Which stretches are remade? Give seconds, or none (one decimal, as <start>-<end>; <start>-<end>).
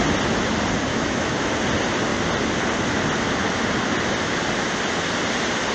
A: 0.9-1.5